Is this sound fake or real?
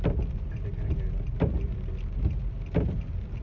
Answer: fake